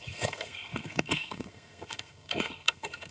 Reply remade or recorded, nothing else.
remade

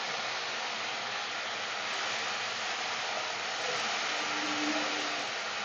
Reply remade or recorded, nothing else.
recorded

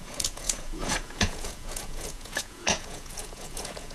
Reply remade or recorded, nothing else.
remade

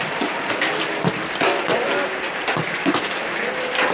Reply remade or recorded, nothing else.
remade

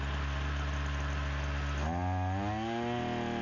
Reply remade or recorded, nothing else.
recorded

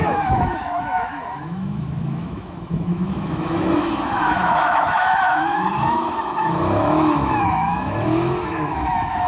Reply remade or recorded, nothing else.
remade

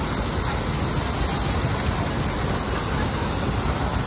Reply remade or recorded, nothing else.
recorded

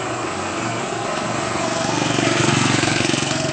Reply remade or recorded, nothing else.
remade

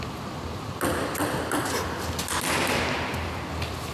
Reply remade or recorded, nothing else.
recorded